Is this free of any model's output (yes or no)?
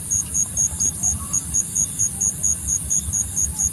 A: yes